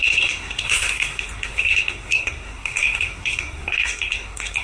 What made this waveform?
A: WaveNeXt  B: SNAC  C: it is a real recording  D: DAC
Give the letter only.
B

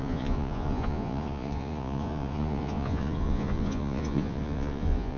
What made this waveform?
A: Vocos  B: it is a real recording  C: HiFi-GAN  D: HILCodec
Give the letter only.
A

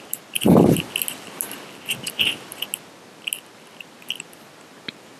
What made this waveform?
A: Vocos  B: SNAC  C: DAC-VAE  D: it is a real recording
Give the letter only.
D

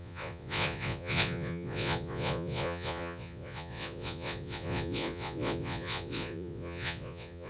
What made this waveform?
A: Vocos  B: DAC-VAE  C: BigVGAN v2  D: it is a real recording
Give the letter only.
A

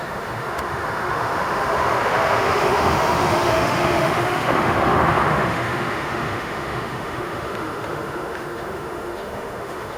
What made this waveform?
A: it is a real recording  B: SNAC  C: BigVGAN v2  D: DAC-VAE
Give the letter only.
D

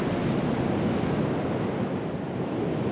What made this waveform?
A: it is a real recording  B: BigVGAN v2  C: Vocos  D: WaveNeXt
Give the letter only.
A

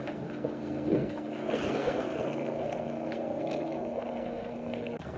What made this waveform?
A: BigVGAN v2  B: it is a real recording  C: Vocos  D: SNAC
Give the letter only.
D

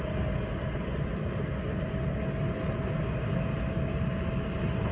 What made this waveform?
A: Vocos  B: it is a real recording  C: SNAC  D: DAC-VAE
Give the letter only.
B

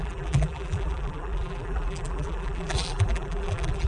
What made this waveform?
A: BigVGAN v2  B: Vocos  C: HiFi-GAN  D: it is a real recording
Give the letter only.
A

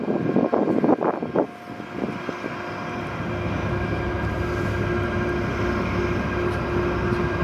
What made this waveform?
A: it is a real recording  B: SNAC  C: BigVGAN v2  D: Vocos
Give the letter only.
A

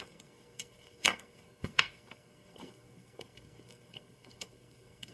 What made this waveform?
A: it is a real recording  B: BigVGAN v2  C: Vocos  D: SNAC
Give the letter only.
D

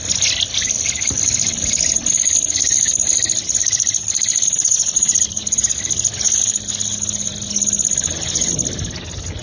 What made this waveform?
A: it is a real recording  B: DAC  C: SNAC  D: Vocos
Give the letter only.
A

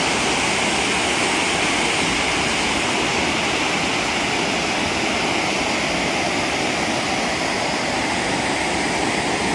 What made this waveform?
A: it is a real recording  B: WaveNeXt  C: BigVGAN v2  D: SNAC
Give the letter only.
A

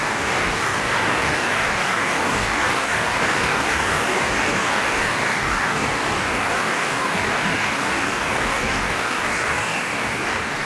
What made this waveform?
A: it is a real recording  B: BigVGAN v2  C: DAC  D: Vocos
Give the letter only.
C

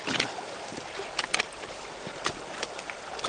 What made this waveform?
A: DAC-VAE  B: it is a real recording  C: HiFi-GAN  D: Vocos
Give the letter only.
B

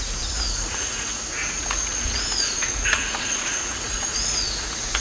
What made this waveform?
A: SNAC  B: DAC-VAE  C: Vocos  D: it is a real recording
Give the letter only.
C